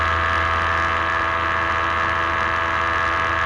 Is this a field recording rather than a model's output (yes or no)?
yes